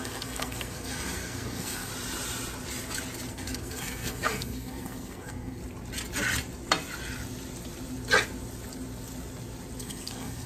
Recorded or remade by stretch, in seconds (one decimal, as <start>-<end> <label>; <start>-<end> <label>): 0.0-1.9 remade; 1.9-3.3 recorded; 3.3-5.6 remade; 5.6-9.8 recorded; 9.8-10.5 remade